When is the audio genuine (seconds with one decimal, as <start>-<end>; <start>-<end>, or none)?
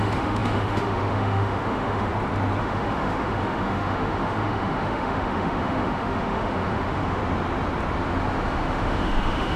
2.1-2.6; 7.2-8.5